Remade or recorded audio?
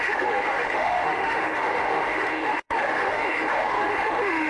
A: remade